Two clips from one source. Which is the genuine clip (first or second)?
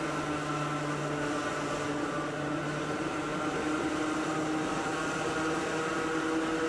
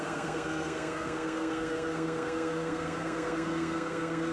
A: first